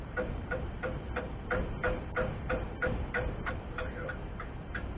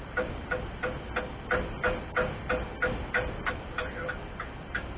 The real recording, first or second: second